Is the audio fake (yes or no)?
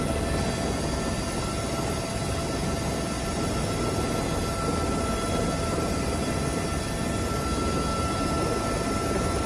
no